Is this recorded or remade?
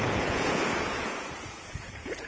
remade